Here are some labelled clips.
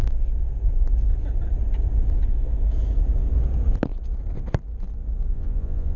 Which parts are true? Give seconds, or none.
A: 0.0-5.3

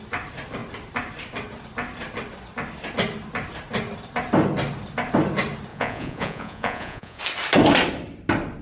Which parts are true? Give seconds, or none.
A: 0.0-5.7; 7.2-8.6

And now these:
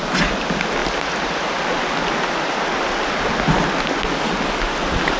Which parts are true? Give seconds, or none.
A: 0.0-5.2